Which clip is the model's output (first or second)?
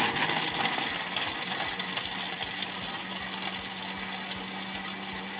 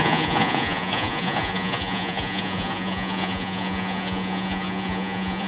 second